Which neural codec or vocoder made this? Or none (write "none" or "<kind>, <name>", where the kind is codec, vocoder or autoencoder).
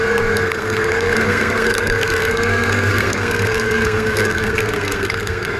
codec, SNAC